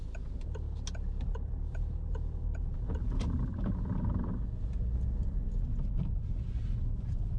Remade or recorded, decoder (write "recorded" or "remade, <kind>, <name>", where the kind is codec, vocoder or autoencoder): recorded